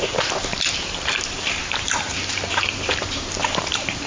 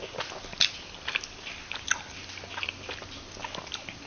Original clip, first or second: second